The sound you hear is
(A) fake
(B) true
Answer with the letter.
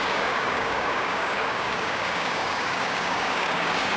A